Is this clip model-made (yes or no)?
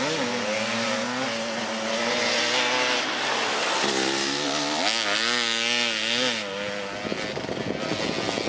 no